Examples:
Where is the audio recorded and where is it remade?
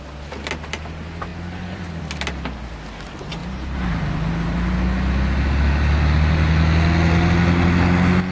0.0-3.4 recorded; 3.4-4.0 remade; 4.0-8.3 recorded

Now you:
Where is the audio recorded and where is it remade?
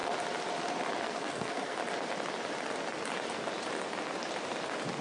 0.0-1.0 recorded; 1.0-1.8 remade; 1.8-5.0 recorded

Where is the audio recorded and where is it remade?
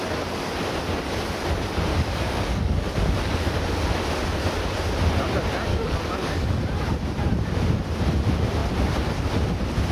0.0-1.9 recorded; 1.9-3.6 remade; 3.6-5.7 recorded; 5.7-6.6 remade; 6.6-9.9 recorded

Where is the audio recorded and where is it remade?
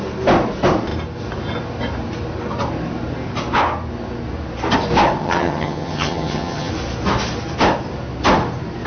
0.0-5.2 recorded; 5.2-6.7 remade; 6.7-8.9 recorded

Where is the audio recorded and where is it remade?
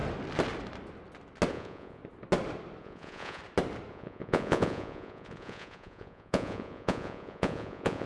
0.0-1.5 recorded; 1.5-2.0 remade; 2.0-2.8 recorded; 2.8-3.4 remade; 3.4-3.9 recorded; 3.9-8.1 remade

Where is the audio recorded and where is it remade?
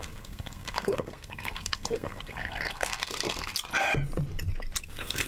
0.0-3.5 remade; 3.5-4.8 recorded; 4.8-5.3 remade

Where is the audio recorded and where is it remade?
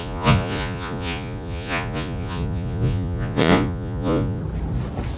0.0-4.4 remade; 4.4-5.2 recorded